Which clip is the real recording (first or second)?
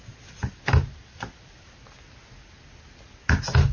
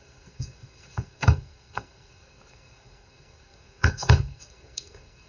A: first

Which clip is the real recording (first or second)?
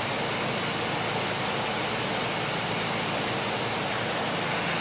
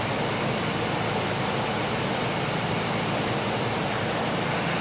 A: first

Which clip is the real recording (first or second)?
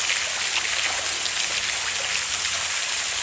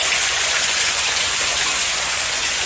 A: first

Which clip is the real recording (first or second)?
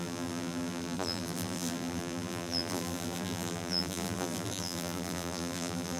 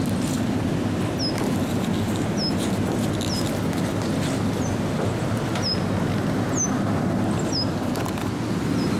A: second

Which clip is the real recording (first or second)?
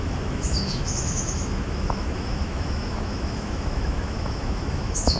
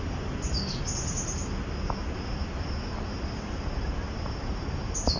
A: second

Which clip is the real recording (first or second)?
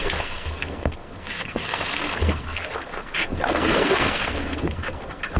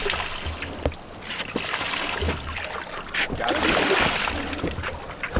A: second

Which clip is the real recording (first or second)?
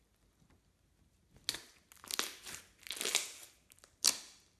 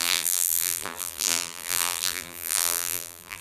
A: first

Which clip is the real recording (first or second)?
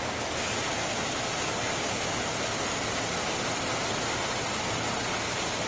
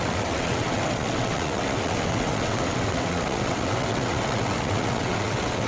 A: first